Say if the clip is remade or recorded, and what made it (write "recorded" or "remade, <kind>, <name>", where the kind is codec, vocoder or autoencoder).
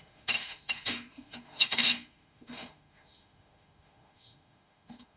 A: remade, autoencoder, DAC-VAE